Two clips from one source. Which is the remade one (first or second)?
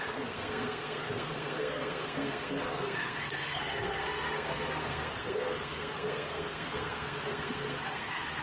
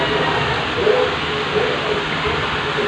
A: first